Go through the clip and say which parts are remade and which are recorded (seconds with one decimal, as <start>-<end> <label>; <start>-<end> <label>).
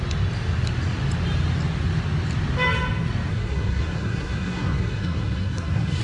0.0-3.3 recorded; 3.3-6.0 remade